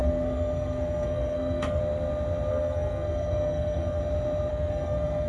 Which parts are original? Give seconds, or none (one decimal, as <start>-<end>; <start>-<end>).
1.8-2.5; 4.0-4.5